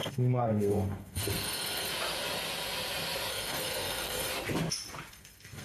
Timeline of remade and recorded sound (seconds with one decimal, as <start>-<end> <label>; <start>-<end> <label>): 0.0-1.9 remade; 1.9-3.3 recorded; 3.3-4.3 remade; 4.3-5.1 recorded; 5.1-5.6 remade